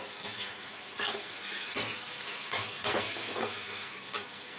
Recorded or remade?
remade